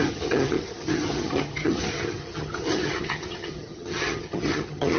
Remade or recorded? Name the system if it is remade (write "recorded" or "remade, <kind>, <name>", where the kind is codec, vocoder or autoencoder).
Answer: remade, vocoder, HiFi-GAN